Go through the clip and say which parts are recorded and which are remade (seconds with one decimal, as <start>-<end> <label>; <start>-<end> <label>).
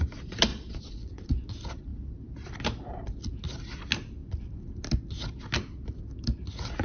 0.0-0.5 recorded; 0.5-1.3 remade; 1.3-6.8 recorded